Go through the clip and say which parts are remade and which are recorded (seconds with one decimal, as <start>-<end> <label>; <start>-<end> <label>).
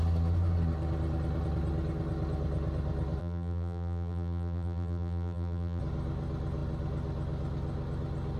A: 0.0-3.2 recorded; 3.2-5.8 remade; 5.8-8.4 recorded